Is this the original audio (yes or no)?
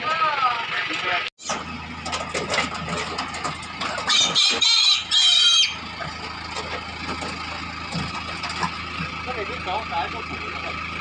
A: yes